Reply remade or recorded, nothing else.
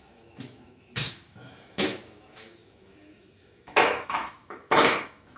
remade